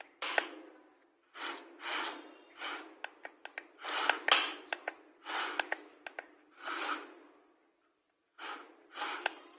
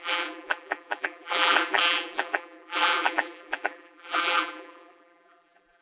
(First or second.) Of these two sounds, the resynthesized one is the second